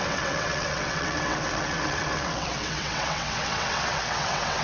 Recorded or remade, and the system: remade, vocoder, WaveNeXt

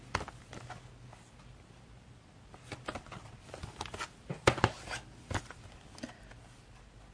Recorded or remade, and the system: recorded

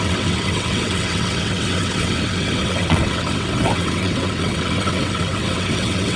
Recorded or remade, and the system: remade, vocoder, WaveNeXt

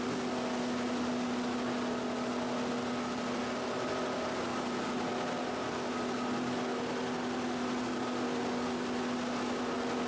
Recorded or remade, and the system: recorded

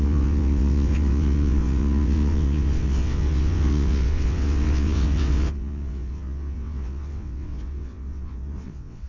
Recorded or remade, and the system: remade, vocoder, WaveNeXt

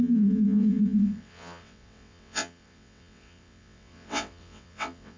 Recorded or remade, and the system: remade, vocoder, WaveNeXt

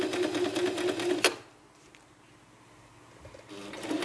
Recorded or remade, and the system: recorded